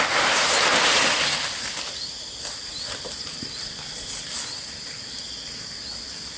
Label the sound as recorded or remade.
recorded